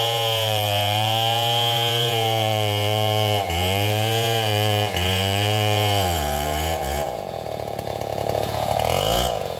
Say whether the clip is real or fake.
fake